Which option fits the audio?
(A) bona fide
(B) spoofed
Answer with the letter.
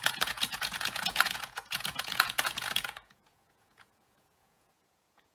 B